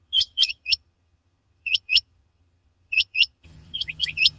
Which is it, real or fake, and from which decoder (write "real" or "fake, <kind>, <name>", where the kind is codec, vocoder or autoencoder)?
fake, vocoder, HiFi-GAN